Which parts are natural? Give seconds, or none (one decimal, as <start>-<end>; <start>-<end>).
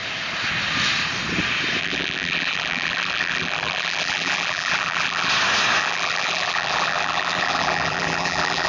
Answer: 0.0-1.8; 5.3-5.8